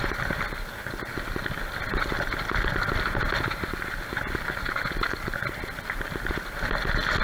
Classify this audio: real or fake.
real